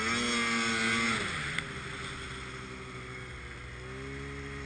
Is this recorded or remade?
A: recorded